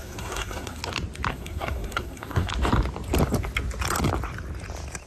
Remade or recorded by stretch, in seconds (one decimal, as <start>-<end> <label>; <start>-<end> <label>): 0.0-0.8 remade; 0.8-1.3 recorded; 1.3-2.5 remade; 2.5-5.1 recorded